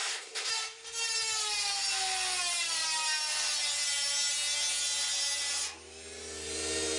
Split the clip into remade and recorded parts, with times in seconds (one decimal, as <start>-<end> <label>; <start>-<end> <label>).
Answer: 0.0-0.5 remade; 0.5-7.0 recorded